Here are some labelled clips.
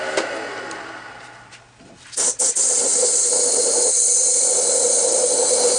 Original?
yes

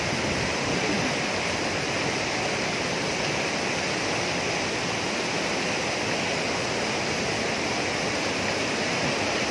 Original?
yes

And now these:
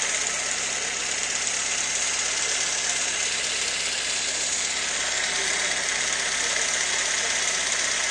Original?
yes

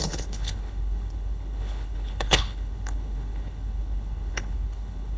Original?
no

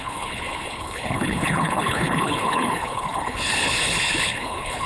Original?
no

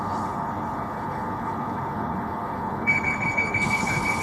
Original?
no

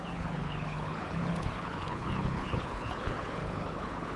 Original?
no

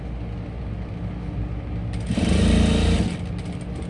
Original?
yes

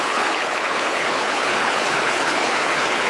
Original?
no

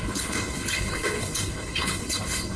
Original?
no